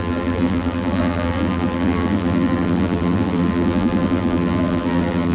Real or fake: fake